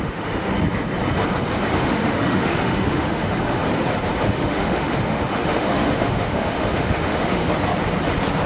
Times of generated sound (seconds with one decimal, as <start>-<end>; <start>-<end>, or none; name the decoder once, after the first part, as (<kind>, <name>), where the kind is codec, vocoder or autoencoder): 0.0-0.5 (autoencoder, DAC-VAE); 1.7-3.6; 4.3-7.4